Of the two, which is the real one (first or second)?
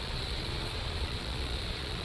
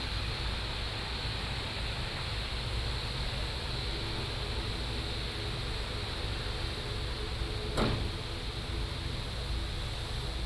second